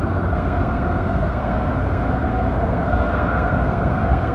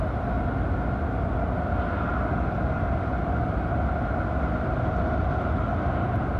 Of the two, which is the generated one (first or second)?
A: first